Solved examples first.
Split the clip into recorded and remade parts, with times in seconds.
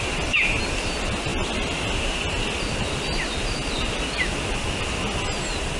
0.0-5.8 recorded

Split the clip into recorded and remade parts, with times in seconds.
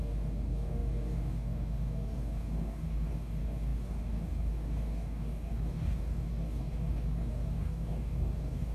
0.0-8.7 remade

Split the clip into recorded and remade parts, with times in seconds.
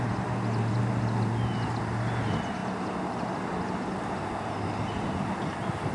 0.0-5.9 recorded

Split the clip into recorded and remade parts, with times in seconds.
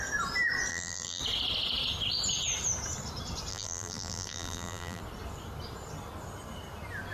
0.0-0.7 recorded; 0.7-1.2 remade; 1.2-3.5 recorded; 3.5-5.0 remade; 5.0-7.1 recorded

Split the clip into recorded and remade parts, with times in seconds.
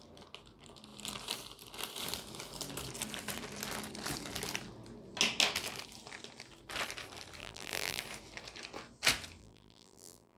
0.0-7.4 recorded; 7.4-8.0 remade; 8.0-9.4 recorded; 9.4-10.4 remade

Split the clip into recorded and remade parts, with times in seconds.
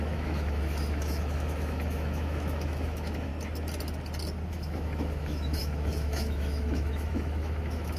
0.0-3.3 remade; 3.3-4.5 recorded; 4.5-8.0 remade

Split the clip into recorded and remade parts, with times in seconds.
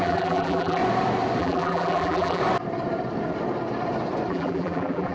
0.0-0.8 remade; 0.8-1.4 recorded; 1.4-2.4 remade; 2.4-4.3 recorded; 4.3-5.1 remade